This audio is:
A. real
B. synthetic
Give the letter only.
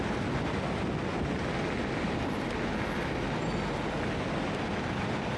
A